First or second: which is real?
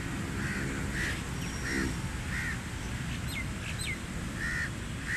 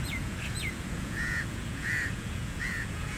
first